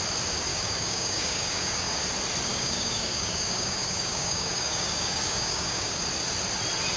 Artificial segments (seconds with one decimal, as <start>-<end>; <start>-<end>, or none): 0.5-2.0; 2.5-6.0